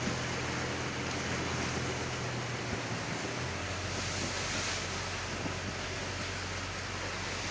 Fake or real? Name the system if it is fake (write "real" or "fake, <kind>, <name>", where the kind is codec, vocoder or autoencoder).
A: real